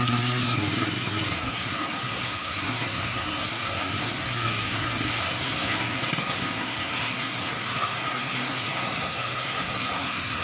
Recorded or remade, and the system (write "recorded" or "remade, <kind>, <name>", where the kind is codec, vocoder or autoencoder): remade, codec, SNAC